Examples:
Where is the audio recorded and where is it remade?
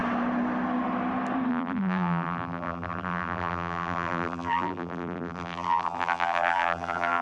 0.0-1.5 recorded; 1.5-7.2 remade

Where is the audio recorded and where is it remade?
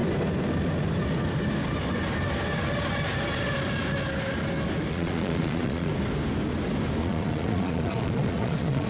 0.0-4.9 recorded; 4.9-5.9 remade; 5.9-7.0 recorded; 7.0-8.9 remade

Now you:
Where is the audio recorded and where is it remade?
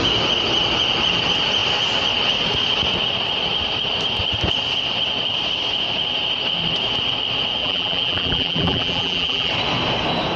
0.0-7.6 recorded; 7.6-9.5 remade; 9.5-10.4 recorded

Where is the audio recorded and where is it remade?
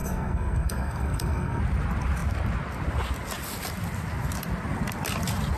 0.0-1.6 remade; 1.6-5.6 recorded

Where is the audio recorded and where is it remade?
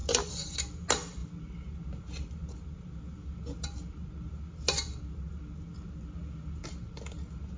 0.0-7.6 recorded